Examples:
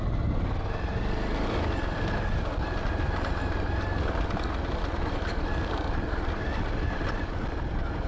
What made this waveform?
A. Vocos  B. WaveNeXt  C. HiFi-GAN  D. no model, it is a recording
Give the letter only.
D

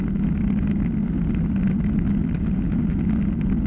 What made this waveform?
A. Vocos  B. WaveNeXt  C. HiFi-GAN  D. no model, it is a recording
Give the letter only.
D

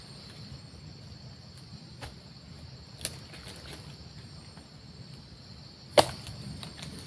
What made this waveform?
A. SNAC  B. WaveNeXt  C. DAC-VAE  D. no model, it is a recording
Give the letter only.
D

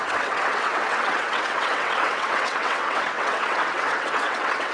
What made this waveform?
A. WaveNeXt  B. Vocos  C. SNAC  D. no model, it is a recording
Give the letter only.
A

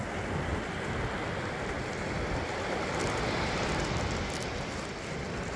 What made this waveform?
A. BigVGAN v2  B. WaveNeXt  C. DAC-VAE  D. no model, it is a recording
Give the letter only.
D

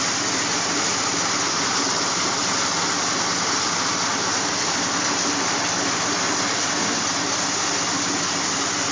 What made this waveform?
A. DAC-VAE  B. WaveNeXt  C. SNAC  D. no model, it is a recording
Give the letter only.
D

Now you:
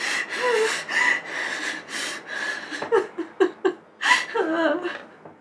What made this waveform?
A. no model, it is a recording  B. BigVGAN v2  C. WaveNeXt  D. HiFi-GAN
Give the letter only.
A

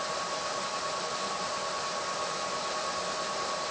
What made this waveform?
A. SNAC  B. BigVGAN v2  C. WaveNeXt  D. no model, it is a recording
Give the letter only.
D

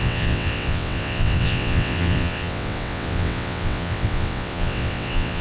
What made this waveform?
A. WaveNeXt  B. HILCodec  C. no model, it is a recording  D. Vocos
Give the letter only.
A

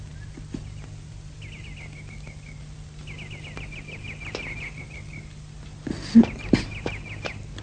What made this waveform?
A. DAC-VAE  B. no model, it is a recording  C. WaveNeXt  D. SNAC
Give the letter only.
B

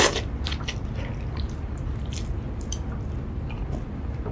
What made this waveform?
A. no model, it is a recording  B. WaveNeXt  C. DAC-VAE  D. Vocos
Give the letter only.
A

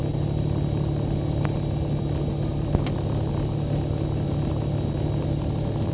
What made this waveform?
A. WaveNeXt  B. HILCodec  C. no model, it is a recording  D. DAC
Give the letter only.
C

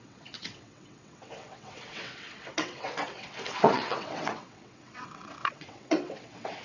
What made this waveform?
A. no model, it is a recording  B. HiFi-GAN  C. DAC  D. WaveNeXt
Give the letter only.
D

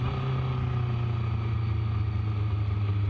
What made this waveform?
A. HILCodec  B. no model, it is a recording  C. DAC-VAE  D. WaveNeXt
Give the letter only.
B